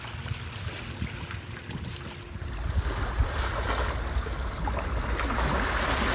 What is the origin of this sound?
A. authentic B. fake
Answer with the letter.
A